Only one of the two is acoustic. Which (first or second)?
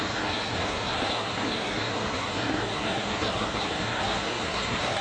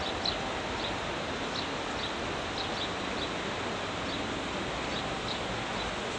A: second